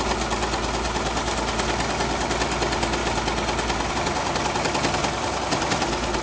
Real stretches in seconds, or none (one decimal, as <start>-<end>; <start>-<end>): 0.0-6.2